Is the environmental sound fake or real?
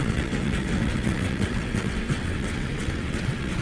fake